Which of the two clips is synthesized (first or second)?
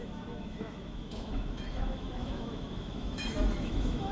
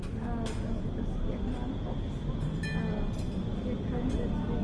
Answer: first